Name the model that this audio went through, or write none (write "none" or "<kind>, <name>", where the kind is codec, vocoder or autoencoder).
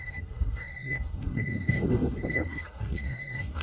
codec, SNAC